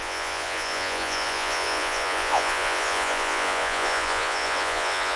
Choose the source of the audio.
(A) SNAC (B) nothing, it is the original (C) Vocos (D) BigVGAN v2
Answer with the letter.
C